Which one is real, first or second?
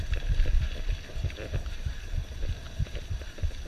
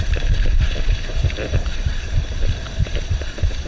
first